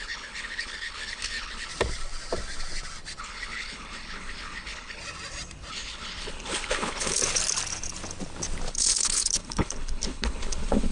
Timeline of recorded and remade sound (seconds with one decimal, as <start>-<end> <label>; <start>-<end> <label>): 0.0-1.7 remade; 1.7-3.2 recorded; 3.2-5.0 remade; 5.0-5.7 recorded; 5.7-7.2 remade; 7.2-8.7 recorded; 8.7-10.9 remade